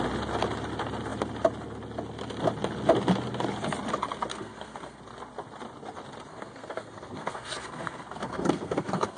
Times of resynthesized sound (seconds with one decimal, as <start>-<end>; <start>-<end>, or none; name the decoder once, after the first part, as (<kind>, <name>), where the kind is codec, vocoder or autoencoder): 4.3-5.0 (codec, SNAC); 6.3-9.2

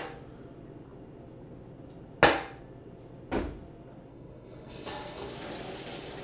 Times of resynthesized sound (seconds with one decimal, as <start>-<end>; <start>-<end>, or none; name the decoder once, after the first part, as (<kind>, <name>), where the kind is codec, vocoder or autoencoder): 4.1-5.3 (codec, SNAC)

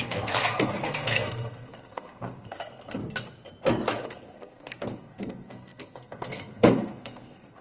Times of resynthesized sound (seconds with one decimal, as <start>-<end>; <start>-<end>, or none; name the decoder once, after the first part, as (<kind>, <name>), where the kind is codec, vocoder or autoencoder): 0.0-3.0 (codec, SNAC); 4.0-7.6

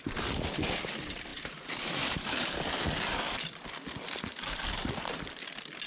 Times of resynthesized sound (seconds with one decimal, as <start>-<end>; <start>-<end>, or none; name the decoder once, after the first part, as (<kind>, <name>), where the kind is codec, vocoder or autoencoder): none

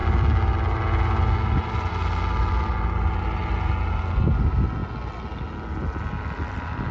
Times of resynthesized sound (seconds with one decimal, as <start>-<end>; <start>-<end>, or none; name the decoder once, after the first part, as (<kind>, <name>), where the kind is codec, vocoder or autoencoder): none

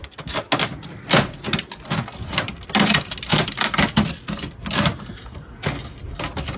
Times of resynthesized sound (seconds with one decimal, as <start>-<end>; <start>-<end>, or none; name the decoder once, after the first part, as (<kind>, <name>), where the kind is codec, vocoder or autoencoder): none

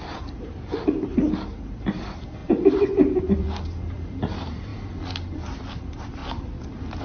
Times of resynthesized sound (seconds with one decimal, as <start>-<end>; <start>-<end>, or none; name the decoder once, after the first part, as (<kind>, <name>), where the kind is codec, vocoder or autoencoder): 0.0-4.7 (vocoder, BigVGAN v2); 5.3-7.0

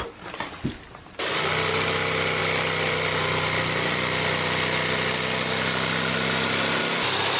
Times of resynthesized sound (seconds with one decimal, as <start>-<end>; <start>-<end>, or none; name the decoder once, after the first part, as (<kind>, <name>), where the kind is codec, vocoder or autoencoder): none